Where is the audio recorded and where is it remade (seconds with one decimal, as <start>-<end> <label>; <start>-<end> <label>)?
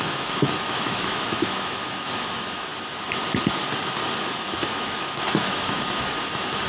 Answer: 0.0-2.7 remade; 2.7-4.2 recorded; 4.2-6.7 remade